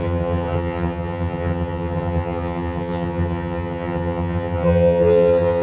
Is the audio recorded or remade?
remade